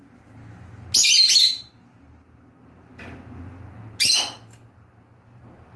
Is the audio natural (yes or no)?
yes